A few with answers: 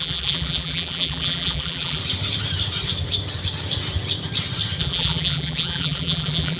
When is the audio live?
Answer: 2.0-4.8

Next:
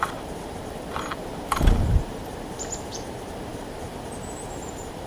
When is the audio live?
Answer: none

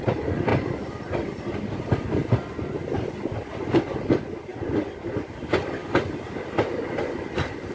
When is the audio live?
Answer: 0.0-5.8; 6.8-7.7

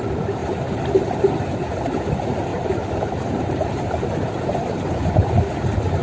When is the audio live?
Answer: 0.0-2.5; 4.9-6.0

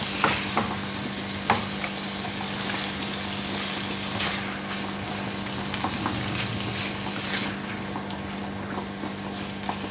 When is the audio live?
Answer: 8.4-9.1